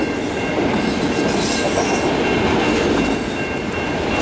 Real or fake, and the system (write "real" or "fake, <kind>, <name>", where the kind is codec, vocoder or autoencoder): real